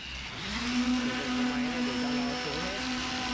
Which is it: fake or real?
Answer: real